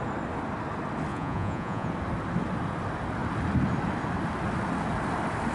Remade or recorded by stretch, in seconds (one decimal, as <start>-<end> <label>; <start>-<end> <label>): 0.0-1.1 recorded; 1.1-1.9 remade; 1.9-5.5 recorded